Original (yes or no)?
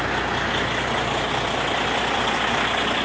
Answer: yes